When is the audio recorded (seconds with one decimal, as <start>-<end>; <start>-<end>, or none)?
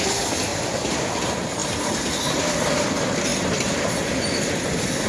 0.0-0.5; 1.1-5.1